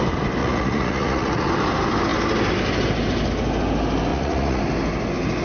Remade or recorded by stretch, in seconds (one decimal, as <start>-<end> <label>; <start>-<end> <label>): 0.0-0.4 recorded; 0.4-1.5 remade; 1.5-4.1 recorded; 4.1-4.6 remade; 4.6-5.4 recorded